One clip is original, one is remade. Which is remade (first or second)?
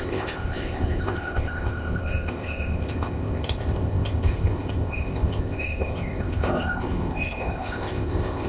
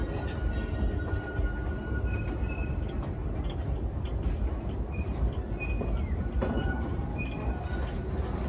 first